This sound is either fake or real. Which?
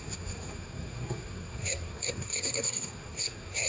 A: fake